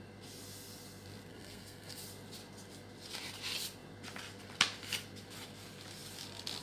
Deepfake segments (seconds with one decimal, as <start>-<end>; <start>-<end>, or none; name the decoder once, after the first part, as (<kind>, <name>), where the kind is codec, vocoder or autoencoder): 1.3-2.0 (codec, SNAC)